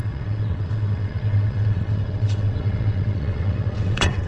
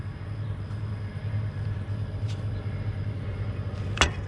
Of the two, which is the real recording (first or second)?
second